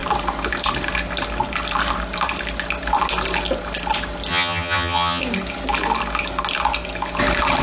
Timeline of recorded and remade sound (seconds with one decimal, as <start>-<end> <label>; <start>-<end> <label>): 0.0-4.3 recorded; 4.3-5.2 remade; 5.2-7.6 recorded